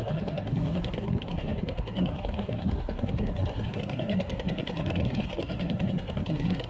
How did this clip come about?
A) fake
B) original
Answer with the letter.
A